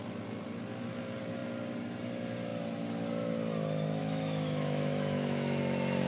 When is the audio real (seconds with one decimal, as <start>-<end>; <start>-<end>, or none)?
0.0-4.0; 5.6-6.1